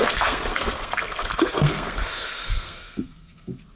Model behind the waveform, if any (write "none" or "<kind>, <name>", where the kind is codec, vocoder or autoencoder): codec, SNAC